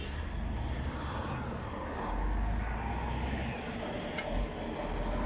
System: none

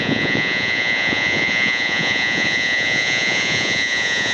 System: vocoder, Vocos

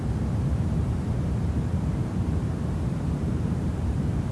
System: vocoder, BigVGAN v2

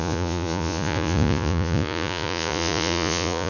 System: vocoder, Vocos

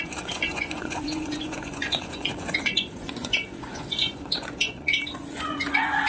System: vocoder, Vocos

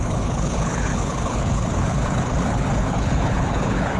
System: codec, HILCodec